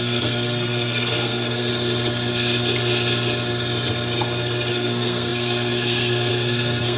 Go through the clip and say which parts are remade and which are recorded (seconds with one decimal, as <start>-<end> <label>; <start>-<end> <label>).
0.0-1.7 remade; 1.7-4.7 recorded; 4.7-7.0 remade